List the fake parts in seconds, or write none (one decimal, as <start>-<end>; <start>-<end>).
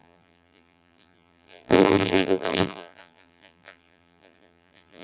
0.0-5.0